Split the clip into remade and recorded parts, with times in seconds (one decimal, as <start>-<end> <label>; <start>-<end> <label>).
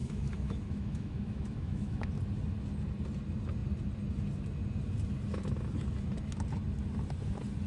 0.0-2.1 remade; 2.1-7.7 recorded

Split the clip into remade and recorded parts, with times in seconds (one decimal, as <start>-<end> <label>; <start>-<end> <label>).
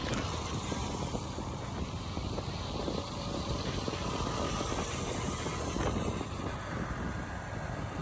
0.0-8.0 recorded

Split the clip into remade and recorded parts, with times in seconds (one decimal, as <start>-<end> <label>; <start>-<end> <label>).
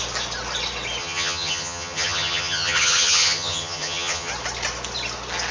0.0-1.0 recorded; 1.0-4.3 remade; 4.3-5.5 recorded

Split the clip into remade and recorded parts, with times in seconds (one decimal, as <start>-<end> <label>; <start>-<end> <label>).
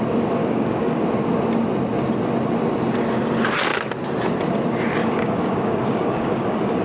0.0-0.4 recorded; 0.4-1.0 remade; 1.0-5.0 recorded; 5.0-6.8 remade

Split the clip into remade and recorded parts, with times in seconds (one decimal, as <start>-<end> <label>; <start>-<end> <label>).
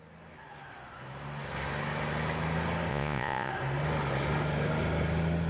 0.0-2.9 recorded; 2.9-3.5 remade; 3.5-5.5 recorded